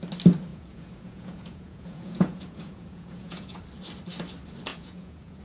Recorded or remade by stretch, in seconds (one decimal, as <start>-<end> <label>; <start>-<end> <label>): 0.0-0.5 recorded; 0.5-3.6 remade; 3.6-4.7 recorded; 4.7-5.4 remade